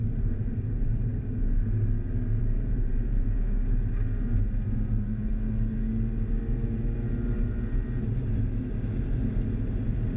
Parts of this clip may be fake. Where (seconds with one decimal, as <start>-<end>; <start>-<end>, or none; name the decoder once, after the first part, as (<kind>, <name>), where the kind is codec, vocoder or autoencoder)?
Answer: 0.0-1.1 (vocoder, BigVGAN v2); 2.4-5.3